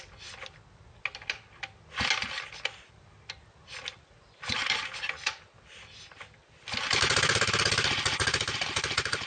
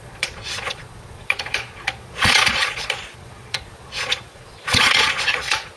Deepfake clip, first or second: second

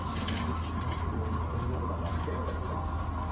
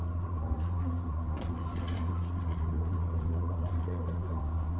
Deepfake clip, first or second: second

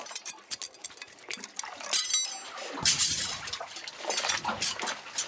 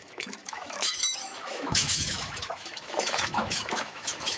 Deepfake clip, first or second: second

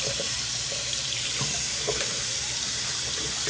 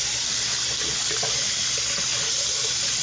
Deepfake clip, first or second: first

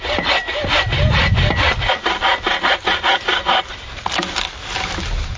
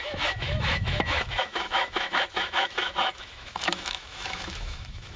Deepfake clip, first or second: second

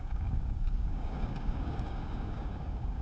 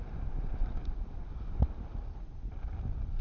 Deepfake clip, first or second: first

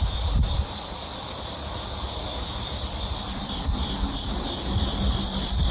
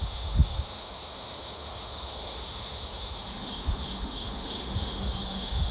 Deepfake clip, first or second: second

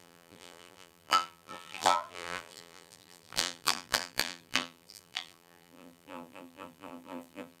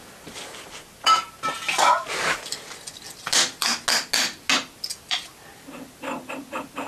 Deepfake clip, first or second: first